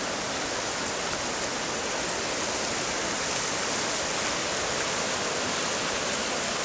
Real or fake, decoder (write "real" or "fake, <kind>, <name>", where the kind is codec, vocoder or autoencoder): real